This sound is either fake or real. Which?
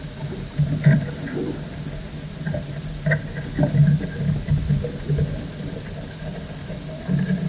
real